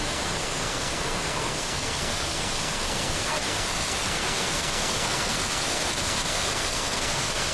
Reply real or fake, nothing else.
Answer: fake